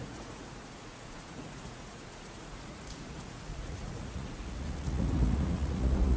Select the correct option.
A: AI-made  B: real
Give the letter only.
A